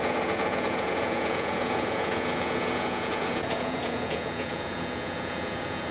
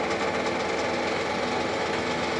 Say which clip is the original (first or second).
second